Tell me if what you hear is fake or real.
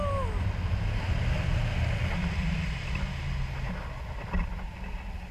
real